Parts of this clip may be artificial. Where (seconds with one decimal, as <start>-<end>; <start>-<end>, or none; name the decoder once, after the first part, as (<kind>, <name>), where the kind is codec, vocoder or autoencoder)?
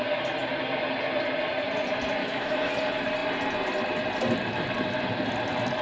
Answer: 2.2-2.7 (autoencoder, DAC-VAE)